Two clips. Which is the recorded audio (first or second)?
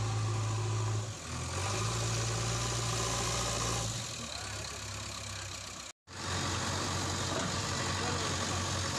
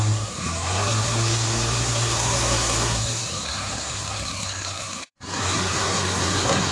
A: first